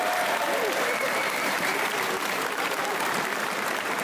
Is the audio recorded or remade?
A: remade